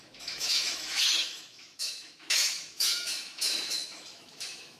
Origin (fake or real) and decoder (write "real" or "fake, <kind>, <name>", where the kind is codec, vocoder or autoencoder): fake, autoencoder, DAC-VAE